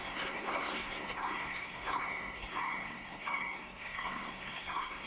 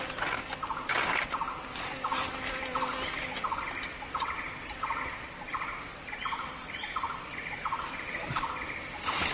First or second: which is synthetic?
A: first